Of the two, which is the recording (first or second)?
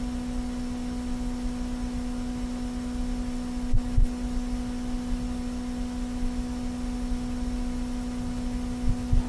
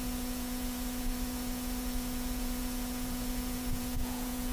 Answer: first